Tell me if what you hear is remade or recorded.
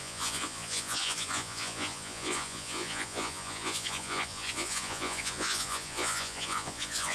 remade